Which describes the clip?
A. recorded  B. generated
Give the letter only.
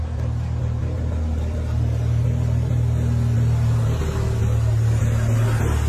A